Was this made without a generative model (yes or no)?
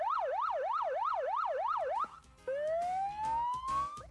yes